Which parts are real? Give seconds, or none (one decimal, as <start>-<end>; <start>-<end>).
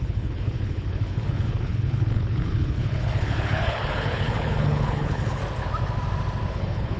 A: 5.4-6.5